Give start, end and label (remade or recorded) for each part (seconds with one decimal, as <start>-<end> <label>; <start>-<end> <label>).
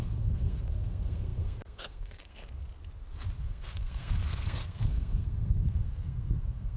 0.0-2.6 remade; 2.6-3.4 recorded; 3.4-6.8 remade